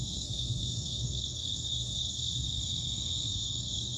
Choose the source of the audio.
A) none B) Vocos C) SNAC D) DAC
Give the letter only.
C